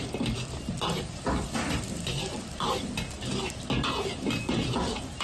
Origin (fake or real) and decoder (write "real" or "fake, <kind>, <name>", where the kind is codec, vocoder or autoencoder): real